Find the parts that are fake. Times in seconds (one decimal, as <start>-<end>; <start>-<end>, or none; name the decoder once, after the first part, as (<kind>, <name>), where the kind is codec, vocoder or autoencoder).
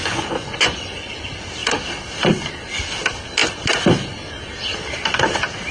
0.0-1.1 (vocoder, Vocos)